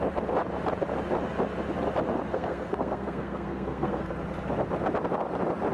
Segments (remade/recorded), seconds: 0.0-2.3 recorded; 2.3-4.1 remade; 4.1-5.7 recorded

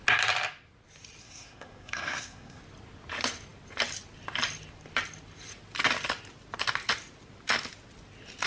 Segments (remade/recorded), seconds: 0.0-1.2 recorded; 1.2-2.6 remade; 2.6-8.5 recorded

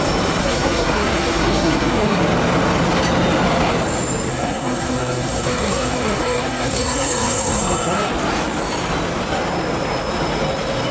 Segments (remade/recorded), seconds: 0.0-0.4 recorded; 0.4-2.2 remade; 2.2-4.3 recorded; 4.3-8.1 remade; 8.1-10.9 recorded

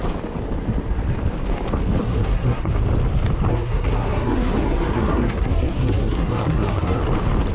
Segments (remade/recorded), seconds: 0.0-2.0 recorded; 2.0-2.7 remade; 2.7-3.5 recorded; 3.5-7.0 remade; 7.0-7.5 recorded